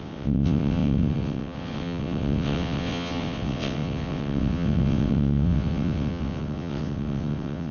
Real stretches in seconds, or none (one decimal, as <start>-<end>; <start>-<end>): none